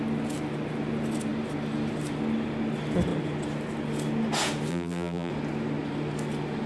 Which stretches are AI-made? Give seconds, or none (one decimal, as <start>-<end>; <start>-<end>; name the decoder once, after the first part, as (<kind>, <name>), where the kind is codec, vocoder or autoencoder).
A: 4.7-5.3 (vocoder, BigVGAN v2)